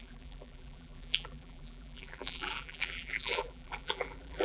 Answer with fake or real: fake